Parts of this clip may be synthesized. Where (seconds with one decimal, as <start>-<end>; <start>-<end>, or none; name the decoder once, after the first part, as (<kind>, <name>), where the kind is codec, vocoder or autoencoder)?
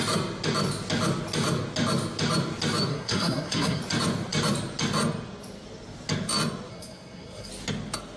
2.9-3.8 (codec, SNAC); 6.7-7.5